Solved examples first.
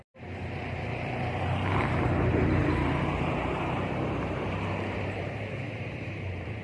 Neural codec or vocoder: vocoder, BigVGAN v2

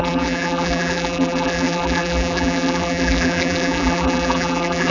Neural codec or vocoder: vocoder, BigVGAN v2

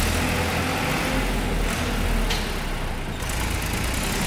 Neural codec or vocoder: none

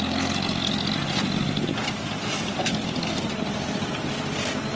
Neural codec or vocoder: none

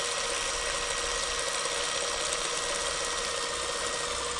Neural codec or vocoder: none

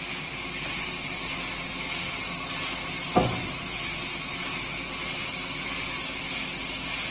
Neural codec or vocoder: none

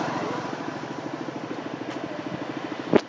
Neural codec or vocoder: none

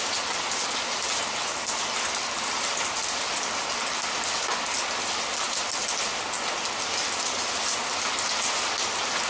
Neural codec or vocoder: none